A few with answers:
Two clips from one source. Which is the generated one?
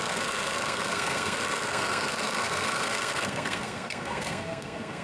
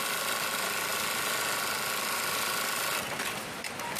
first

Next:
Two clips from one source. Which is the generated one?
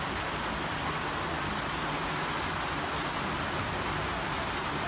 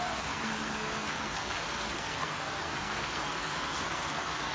second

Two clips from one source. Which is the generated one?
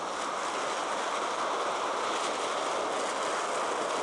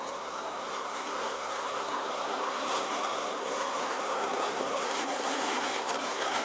second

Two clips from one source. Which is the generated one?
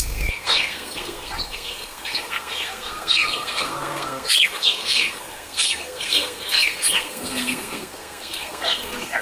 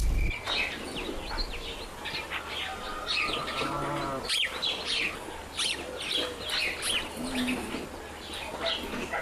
first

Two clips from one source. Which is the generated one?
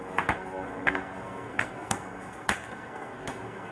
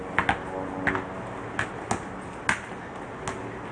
first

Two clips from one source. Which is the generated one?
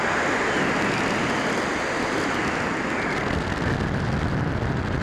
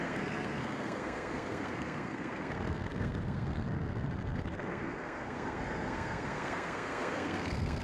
second